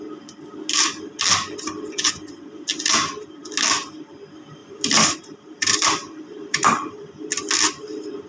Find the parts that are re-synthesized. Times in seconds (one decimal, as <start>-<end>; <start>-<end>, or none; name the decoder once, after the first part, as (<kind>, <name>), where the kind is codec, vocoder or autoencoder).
4.6-7.1 (vocoder, BigVGAN v2)